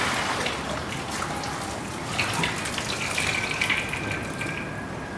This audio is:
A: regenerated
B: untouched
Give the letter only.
B